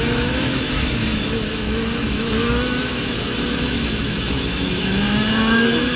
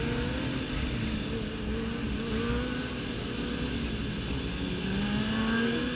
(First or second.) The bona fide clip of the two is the second